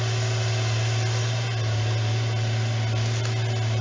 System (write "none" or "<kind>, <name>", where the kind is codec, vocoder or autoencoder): none